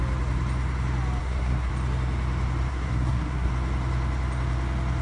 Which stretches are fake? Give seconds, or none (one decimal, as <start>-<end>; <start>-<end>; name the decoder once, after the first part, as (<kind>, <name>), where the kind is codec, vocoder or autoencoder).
1.2-1.7 (codec, SNAC); 2.7-3.5

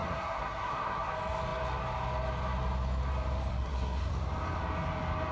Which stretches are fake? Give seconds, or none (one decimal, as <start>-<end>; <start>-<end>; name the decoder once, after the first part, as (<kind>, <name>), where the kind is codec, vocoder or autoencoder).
0.0-1.1 (codec, SNAC); 3.5-4.1

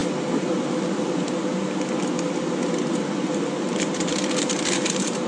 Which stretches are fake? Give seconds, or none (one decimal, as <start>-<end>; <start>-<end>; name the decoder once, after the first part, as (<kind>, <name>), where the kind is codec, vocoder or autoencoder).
none

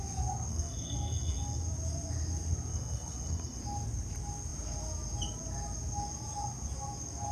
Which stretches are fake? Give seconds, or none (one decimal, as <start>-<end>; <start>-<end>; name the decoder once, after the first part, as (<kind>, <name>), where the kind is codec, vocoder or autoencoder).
0.5-1.6 (codec, SNAC); 2.7-3.6

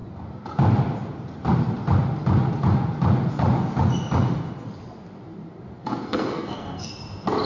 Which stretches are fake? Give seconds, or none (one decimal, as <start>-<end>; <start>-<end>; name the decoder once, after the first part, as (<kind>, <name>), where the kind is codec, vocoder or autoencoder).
5.8-6.9 (codec, SNAC)

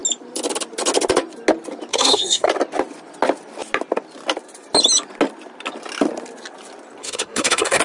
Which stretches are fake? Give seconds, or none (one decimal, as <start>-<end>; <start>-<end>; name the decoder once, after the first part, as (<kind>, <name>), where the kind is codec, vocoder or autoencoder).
1.9-2.5 (codec, SNAC); 7.0-7.8